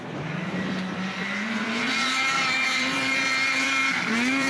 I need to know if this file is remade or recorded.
remade